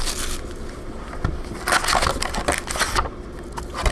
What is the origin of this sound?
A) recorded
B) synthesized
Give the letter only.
A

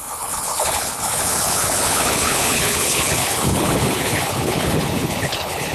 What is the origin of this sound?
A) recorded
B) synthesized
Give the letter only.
B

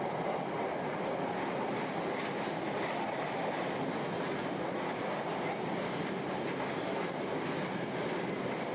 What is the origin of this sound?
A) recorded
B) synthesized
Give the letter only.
A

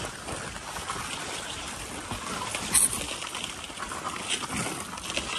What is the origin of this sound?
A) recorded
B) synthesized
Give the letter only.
A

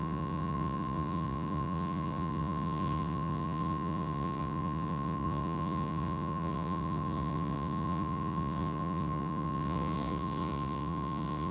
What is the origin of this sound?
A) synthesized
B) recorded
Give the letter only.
A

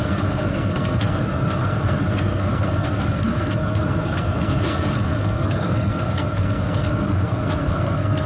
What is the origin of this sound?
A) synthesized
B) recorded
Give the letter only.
A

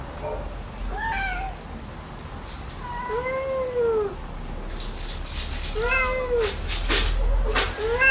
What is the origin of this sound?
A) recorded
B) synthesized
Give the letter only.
A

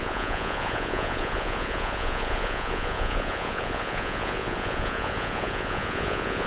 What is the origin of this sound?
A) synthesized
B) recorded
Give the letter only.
A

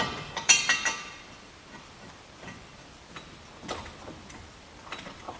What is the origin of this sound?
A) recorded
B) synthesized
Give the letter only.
B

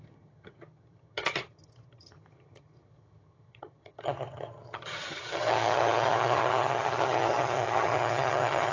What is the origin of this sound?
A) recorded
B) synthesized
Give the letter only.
B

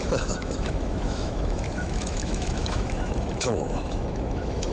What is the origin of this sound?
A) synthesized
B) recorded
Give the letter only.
A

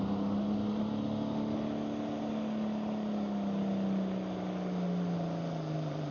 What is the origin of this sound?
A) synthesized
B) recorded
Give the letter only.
B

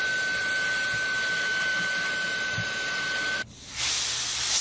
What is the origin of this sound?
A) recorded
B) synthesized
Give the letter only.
B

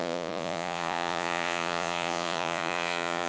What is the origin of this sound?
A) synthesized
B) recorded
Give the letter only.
A